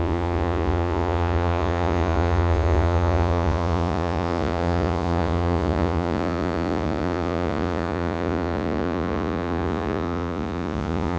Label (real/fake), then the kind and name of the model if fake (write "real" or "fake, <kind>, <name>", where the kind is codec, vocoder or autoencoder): fake, vocoder, Vocos